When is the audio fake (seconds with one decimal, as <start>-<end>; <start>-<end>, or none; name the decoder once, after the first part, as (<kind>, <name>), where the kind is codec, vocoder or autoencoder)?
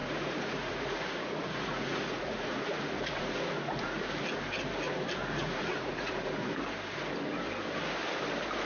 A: 0.0-4.1 (vocoder, Vocos); 5.2-6.6